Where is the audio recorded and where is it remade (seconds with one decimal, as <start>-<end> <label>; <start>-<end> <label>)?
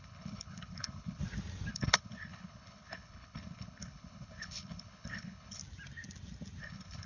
0.0-1.2 remade; 1.2-1.7 recorded; 1.7-5.6 remade; 5.6-6.6 recorded; 6.6-7.1 remade